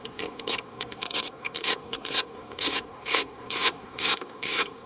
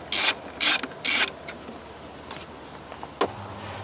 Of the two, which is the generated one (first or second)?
first